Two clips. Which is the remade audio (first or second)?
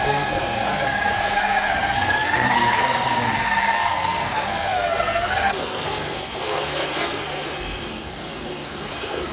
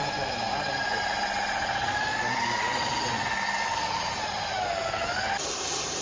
first